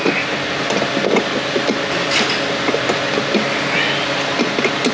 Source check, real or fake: real